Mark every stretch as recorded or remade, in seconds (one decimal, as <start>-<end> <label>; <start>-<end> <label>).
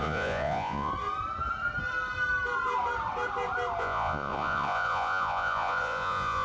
0.0-0.9 remade; 0.9-3.8 recorded; 3.8-6.4 remade